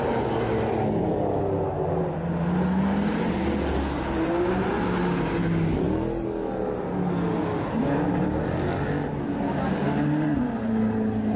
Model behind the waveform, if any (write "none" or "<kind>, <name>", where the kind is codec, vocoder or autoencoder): none